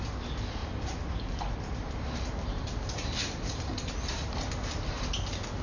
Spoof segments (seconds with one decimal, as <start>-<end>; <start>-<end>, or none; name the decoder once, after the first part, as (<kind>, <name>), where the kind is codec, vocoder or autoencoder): 0.6-3.7 (vocoder, BigVGAN v2)